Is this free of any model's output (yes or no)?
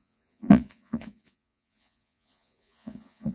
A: no